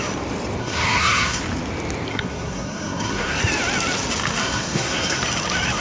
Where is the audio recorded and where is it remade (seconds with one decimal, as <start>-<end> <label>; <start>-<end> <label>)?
0.0-0.6 recorded; 0.6-1.4 remade; 1.4-2.1 recorded; 2.1-3.4 remade; 3.4-4.4 recorded; 4.4-5.2 remade; 5.2-5.8 recorded